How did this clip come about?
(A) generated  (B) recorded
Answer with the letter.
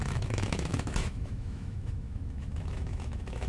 A